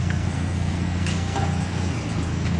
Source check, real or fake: fake